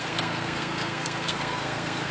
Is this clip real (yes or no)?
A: no